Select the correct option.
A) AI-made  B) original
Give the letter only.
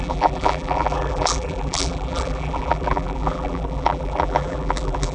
A